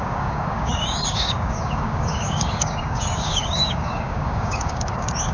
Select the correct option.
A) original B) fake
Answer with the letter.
B